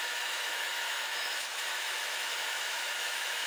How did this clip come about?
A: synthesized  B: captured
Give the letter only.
A